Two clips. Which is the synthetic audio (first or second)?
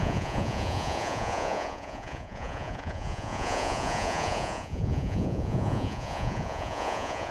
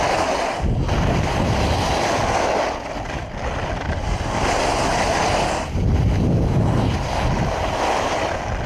first